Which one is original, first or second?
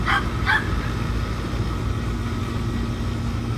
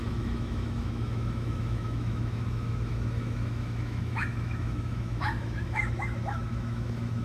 first